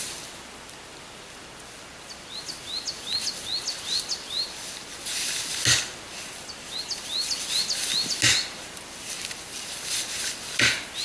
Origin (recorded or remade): recorded